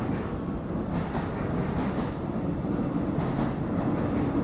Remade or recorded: recorded